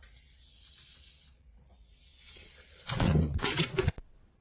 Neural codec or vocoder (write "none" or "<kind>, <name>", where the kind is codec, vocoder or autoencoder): vocoder, Vocos